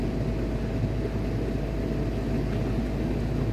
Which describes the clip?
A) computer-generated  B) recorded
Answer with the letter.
B